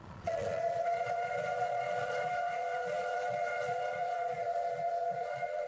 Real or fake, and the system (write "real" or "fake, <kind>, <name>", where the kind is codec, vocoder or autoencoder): fake, vocoder, Vocos